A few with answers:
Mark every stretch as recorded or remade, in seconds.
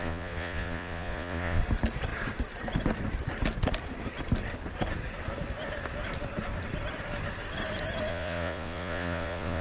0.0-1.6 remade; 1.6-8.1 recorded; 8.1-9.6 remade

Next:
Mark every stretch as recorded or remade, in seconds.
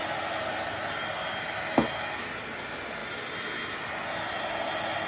0.0-5.1 recorded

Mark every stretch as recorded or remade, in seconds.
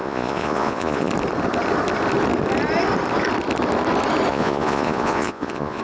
0.0-1.1 remade; 1.1-4.3 recorded; 4.3-5.8 remade